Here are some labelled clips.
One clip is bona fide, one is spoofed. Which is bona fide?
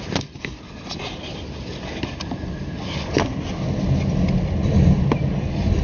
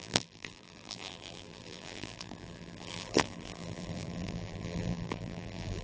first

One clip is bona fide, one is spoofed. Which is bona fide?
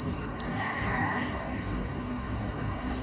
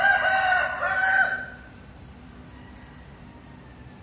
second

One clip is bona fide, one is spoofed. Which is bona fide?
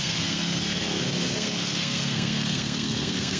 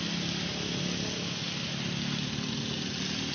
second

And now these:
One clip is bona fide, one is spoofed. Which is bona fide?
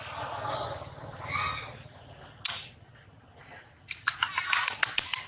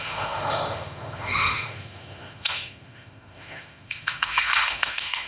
first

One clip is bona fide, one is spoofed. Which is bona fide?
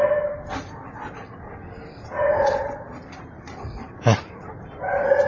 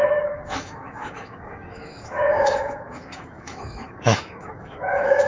first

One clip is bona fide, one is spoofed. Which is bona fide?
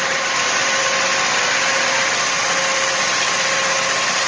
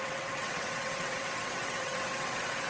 first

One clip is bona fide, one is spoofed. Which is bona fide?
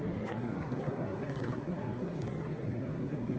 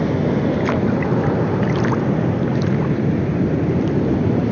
second